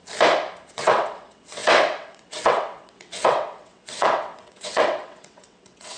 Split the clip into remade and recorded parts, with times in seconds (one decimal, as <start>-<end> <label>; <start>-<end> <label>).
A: 0.0-0.7 recorded; 0.7-6.0 remade

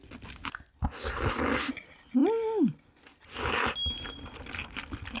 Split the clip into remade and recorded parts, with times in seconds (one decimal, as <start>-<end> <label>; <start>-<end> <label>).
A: 0.0-5.2 recorded

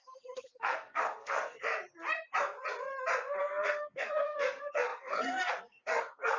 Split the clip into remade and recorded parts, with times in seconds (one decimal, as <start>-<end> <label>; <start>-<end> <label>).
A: 0.0-1.7 remade; 1.7-3.4 recorded; 3.4-6.4 remade

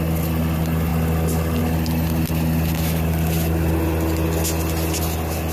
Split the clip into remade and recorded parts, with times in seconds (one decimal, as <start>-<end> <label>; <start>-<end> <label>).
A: 0.0-5.5 recorded